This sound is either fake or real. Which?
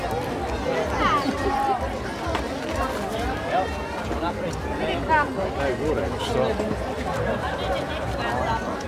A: real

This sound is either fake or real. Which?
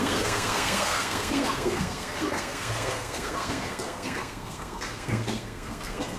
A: fake